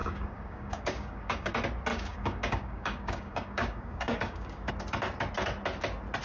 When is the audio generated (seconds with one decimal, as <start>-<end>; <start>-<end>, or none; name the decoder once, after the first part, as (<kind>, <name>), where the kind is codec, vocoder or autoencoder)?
0.0-1.5 (codec, DAC); 1.9-4.7